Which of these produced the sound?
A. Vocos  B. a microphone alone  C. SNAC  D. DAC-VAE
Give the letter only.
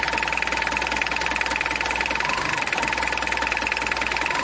B